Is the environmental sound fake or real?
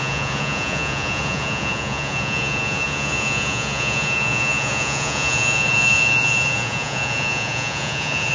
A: fake